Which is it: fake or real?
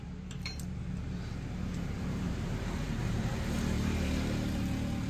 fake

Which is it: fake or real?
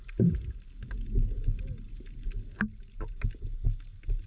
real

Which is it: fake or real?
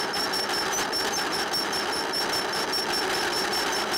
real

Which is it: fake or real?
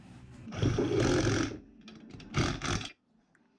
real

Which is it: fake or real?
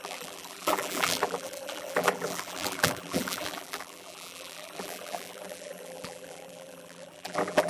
fake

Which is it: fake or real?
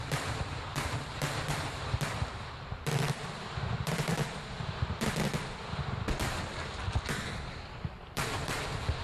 fake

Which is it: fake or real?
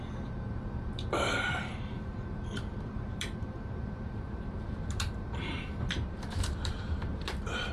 fake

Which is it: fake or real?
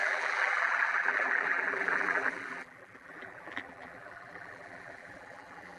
fake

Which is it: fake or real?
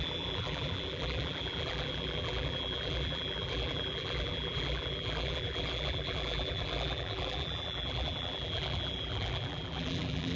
fake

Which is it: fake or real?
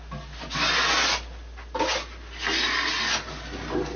real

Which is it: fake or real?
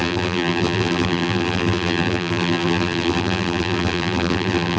fake